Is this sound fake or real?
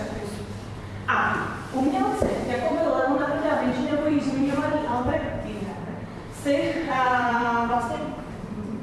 fake